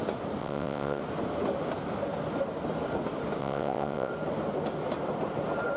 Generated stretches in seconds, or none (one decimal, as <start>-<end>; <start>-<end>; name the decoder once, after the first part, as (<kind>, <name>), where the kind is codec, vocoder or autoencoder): 0.4-1.0 (vocoder, WaveNeXt); 3.4-4.1